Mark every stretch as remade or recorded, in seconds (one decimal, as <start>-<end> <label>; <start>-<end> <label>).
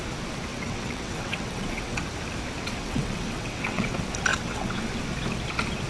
0.0-0.5 recorded; 0.5-2.0 remade; 2.0-2.6 recorded; 2.6-3.9 remade; 3.9-4.3 recorded; 4.3-4.8 remade; 4.8-5.9 recorded